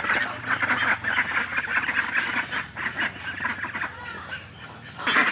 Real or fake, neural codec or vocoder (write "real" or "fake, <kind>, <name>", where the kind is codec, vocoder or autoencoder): real